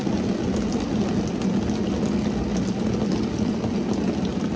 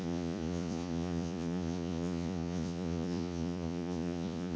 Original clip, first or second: first